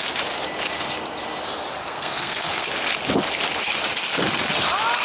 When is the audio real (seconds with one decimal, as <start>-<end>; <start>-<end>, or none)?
0.0-1.8; 2.7-5.0